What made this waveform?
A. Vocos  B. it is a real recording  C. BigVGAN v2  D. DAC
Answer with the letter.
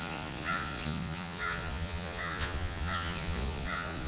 A